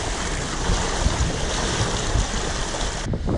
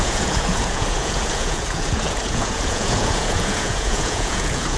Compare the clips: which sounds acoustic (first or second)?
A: first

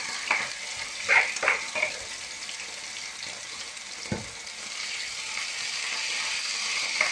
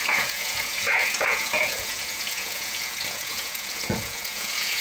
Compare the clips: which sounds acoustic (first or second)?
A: first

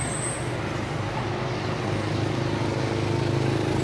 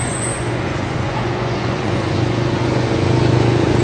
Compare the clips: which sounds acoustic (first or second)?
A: first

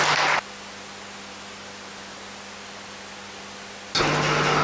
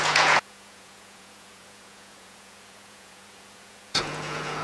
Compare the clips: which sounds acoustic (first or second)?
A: first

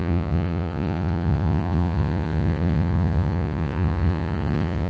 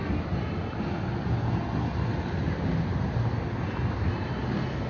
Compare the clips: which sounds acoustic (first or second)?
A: second